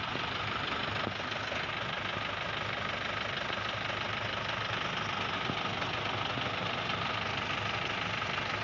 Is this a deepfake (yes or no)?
no